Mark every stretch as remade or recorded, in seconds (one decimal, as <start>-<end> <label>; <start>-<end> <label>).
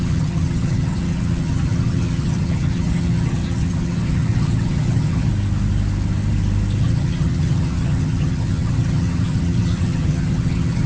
0.0-5.3 remade; 5.3-6.8 recorded; 6.8-10.9 remade